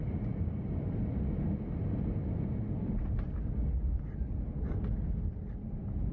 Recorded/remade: recorded